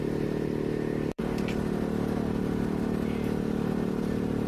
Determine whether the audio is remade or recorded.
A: remade